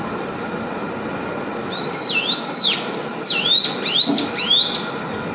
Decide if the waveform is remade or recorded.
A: recorded